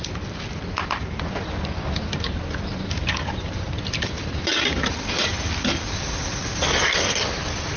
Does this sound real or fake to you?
real